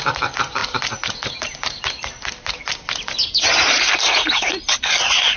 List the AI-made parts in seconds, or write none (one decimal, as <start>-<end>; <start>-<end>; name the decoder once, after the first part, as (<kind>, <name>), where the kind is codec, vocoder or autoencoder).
none